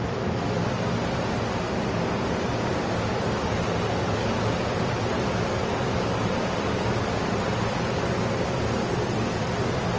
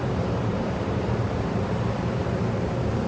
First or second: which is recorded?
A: first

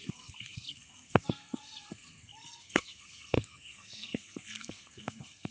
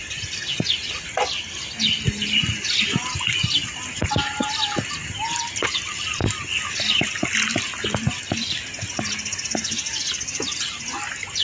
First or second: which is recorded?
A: second